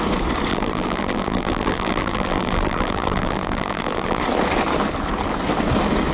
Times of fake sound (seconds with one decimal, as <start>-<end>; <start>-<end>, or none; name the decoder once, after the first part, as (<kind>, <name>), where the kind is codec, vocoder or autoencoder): 0.5-4.2 (vocoder, BigVGAN v2)